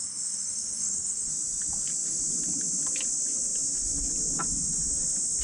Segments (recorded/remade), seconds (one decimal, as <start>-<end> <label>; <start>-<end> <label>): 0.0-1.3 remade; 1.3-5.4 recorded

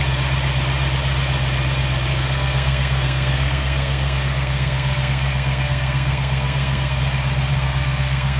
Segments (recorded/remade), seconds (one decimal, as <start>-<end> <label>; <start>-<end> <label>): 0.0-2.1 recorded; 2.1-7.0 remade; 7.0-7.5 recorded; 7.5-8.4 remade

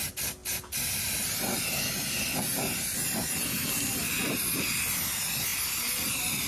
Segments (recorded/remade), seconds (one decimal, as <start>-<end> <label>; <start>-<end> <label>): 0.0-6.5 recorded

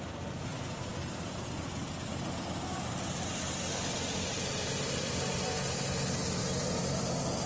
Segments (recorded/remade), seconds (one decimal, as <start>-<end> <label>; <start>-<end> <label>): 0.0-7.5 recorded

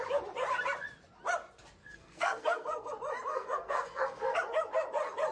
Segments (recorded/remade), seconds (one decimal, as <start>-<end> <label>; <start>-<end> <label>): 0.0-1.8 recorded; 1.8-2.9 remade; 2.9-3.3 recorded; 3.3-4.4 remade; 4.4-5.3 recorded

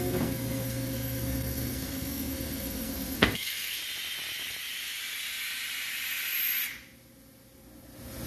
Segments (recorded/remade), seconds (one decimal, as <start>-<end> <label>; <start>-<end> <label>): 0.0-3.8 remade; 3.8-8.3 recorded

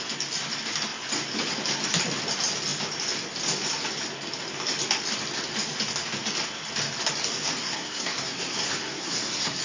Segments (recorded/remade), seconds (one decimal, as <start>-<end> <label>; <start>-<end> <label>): 0.0-7.6 recorded; 7.6-9.6 remade

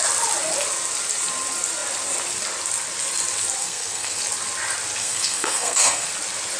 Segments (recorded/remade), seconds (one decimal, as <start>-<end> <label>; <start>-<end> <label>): 0.0-3.6 recorded; 3.6-4.2 remade; 4.2-5.0 recorded; 5.0-6.1 remade; 6.1-6.6 recorded